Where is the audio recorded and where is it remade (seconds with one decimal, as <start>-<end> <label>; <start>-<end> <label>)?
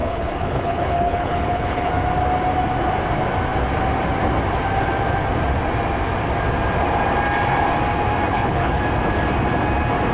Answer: 0.0-1.9 remade; 1.9-8.3 recorded; 8.3-8.8 remade; 8.8-10.1 recorded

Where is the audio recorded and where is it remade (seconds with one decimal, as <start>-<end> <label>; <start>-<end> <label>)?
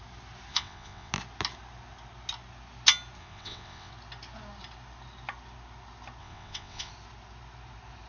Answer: 0.0-0.5 recorded; 0.5-1.1 remade; 1.1-3.2 recorded; 3.2-3.9 remade; 3.9-6.2 recorded; 6.2-6.9 remade; 6.9-8.1 recorded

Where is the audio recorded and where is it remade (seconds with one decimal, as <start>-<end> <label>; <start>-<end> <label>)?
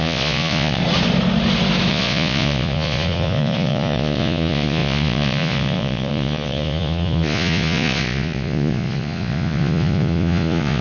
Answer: 0.0-0.8 remade; 0.8-1.9 recorded; 1.9-10.8 remade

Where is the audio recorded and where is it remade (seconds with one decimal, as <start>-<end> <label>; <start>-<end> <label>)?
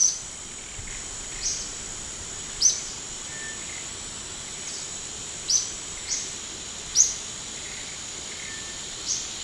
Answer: 0.0-0.9 recorded; 0.9-3.3 remade; 3.3-4.3 recorded; 4.3-9.4 remade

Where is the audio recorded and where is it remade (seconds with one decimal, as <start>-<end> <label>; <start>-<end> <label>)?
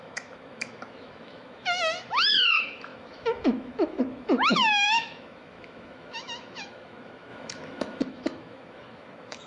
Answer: 0.0-9.5 remade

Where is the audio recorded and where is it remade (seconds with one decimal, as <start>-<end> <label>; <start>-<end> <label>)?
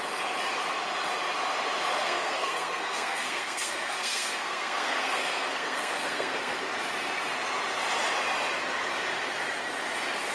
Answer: 0.0-2.0 recorded; 2.0-6.6 remade; 6.6-10.3 recorded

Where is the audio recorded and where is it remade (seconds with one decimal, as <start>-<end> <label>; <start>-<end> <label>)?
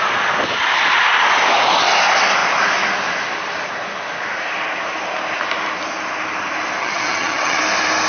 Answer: 0.0-6.8 recorded; 6.8-7.6 remade; 7.6-8.1 recorded